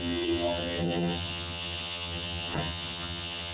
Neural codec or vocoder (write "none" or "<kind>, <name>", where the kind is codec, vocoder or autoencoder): vocoder, HiFi-GAN